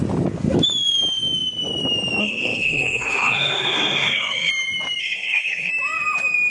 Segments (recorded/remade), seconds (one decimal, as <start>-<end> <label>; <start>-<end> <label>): 0.0-2.2 recorded; 2.2-4.5 remade; 4.5-5.0 recorded; 5.0-5.7 remade; 5.7-6.5 recorded